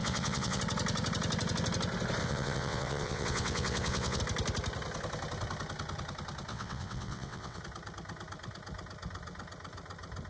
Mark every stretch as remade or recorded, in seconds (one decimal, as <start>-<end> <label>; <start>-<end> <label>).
0.0-0.6 remade; 0.6-2.2 recorded; 2.2-4.2 remade; 4.2-6.5 recorded; 6.5-7.6 remade; 7.6-10.3 recorded